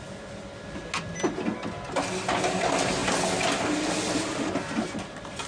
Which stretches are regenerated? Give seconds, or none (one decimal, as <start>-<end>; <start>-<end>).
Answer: none